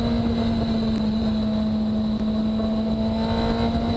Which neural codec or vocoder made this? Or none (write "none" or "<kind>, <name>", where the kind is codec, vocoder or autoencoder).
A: none